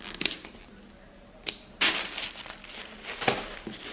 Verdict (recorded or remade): recorded